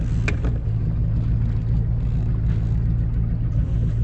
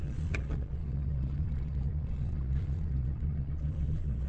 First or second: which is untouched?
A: first